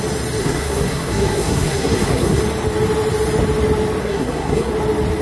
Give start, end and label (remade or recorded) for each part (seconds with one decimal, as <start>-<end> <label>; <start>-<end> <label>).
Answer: 0.0-0.4 recorded; 0.4-2.4 remade; 2.4-4.0 recorded; 4.0-4.7 remade; 4.7-5.2 recorded